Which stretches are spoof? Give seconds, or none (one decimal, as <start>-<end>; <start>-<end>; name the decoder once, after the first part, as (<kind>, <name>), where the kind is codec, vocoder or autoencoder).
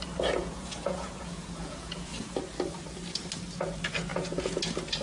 0.4-2.3 (vocoder, Vocos); 4.1-4.6